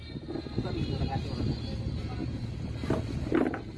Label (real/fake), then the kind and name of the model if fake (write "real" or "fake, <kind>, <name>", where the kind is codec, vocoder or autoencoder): real